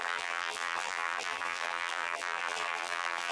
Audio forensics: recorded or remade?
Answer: remade